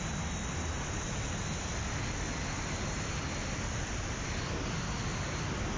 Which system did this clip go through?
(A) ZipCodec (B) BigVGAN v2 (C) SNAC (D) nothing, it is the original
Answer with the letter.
D